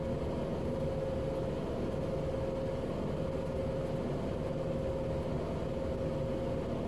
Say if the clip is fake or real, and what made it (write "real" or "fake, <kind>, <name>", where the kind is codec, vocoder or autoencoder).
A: real